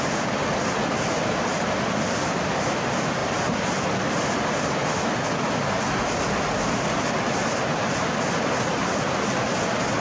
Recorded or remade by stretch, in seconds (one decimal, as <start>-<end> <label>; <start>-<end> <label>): 0.0-10.0 recorded